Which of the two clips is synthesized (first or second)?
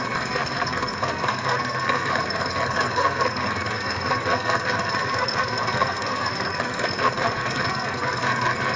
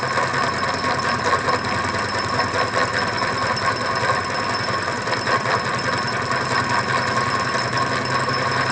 first